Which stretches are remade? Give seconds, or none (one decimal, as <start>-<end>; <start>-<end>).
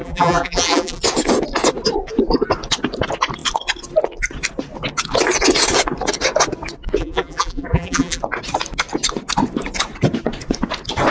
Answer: 0.0-1.0; 7.0-8.2